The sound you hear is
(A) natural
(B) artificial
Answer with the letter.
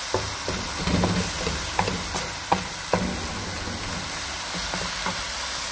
A